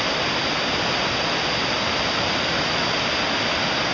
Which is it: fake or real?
real